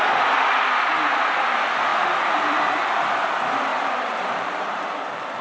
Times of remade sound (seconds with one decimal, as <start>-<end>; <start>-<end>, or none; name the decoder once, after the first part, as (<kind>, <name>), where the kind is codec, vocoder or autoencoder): 1.9-2.9 (vocoder, BigVGAN v2); 3.7-5.4